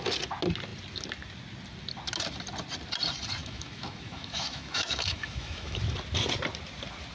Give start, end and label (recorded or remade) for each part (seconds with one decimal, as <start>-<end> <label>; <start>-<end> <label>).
0.0-3.4 recorded; 3.4-5.8 remade; 5.8-7.1 recorded